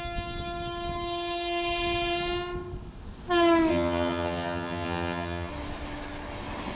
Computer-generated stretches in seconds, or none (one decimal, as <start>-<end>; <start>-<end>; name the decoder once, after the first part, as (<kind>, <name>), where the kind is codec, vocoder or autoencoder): 3.7-5.5 (vocoder, HiFi-GAN)